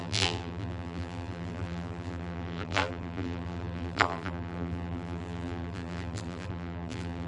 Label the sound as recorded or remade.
remade